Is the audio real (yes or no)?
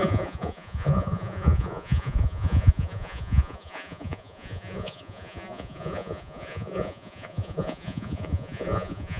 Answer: no